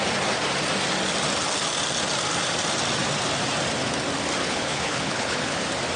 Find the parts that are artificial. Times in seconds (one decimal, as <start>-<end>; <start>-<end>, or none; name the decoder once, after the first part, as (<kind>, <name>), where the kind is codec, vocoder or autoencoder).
4.4-5.6 (codec, HILCodec)